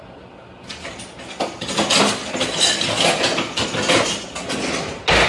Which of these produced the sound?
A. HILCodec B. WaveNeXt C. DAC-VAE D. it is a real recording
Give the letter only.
D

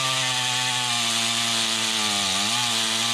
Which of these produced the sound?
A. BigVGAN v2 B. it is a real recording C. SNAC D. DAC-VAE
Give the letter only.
B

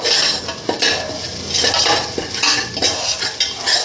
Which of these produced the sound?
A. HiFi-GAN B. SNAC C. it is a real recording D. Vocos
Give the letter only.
C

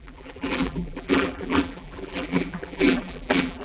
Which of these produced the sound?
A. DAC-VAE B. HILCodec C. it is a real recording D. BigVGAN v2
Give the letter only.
D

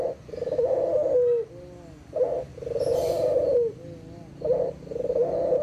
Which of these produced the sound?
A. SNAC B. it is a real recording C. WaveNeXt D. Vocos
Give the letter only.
B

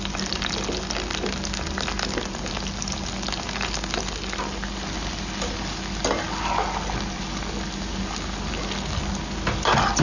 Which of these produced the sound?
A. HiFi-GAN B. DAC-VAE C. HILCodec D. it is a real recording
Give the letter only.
D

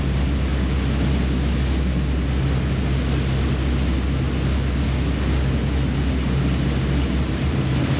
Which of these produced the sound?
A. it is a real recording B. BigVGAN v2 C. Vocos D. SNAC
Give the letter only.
A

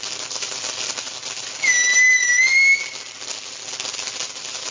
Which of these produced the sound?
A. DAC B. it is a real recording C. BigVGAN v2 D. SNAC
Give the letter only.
B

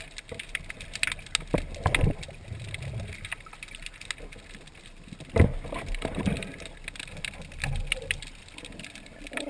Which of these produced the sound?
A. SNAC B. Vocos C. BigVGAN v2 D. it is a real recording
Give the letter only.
D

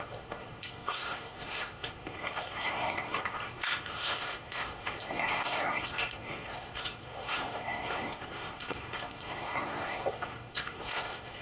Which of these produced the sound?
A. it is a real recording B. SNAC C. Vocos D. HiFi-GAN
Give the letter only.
B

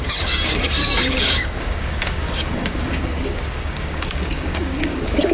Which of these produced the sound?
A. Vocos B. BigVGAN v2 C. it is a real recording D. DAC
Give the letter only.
D